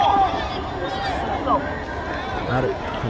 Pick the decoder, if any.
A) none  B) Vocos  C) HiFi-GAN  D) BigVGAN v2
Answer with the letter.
A